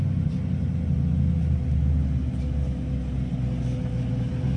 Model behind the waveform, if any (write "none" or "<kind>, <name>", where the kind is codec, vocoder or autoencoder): none